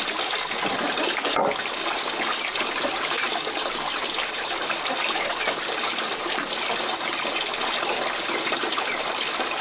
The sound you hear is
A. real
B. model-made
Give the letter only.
A